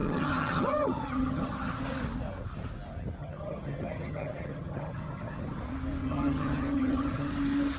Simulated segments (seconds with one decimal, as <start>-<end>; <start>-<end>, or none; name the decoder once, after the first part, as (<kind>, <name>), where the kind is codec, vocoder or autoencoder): 0.0-1.8 (vocoder, HiFi-GAN); 3.2-5.6; 6.0-7.3